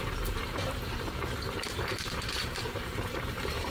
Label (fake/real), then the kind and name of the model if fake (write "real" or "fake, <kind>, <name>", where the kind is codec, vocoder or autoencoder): fake, vocoder, BigVGAN v2